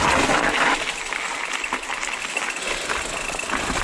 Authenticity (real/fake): real